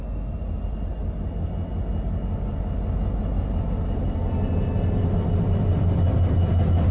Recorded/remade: recorded